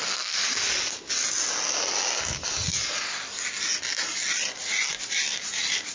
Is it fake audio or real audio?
real